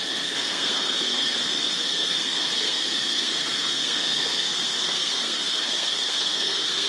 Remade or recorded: remade